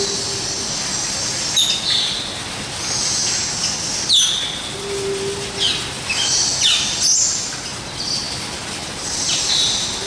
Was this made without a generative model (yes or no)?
yes